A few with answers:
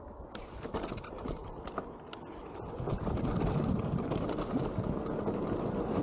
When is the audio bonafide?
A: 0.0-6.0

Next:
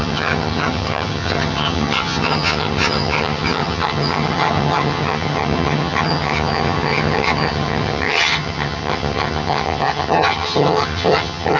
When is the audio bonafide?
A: none

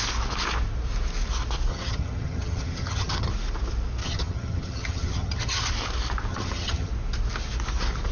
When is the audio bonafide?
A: 0.0-1.7; 3.3-4.0; 5.7-6.3; 6.9-8.1

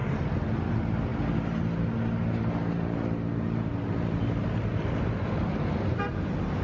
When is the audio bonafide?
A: 0.0-6.6

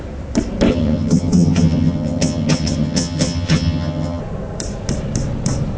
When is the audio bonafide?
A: 0.0-0.7; 4.2-5.8

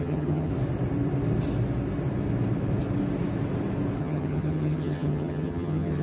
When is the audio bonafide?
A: 0.5-4.0

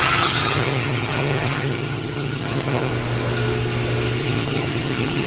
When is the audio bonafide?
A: 2.9-4.2